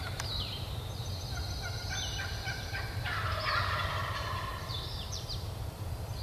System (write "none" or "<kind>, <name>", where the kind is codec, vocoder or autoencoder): vocoder, BigVGAN v2